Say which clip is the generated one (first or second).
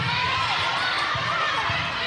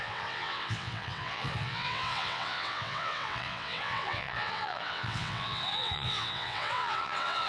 second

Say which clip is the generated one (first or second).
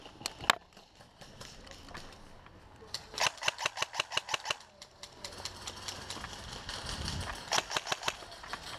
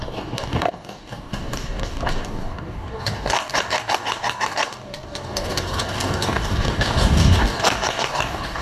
second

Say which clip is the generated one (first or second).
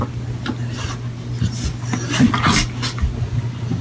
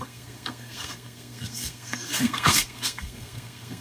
second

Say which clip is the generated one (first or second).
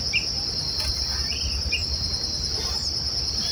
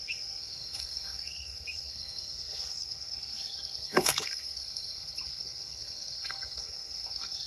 second